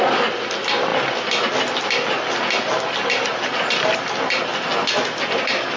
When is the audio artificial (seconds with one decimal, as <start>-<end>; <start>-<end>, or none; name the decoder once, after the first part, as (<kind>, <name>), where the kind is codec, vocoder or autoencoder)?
none